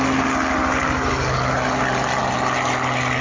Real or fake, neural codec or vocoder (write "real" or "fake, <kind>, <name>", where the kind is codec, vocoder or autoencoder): real